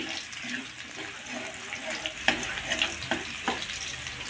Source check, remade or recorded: recorded